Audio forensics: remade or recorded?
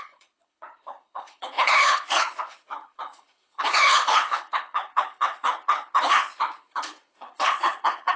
remade